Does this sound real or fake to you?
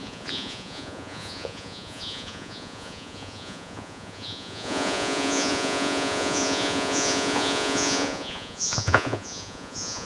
fake